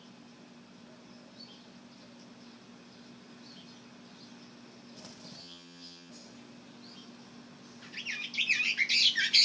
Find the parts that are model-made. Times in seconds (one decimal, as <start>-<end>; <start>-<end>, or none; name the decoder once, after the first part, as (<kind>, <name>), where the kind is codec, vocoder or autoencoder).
5.4-6.1 (vocoder, HiFi-GAN)